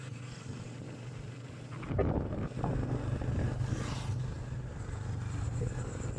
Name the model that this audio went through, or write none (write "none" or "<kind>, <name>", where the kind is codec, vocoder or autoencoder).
none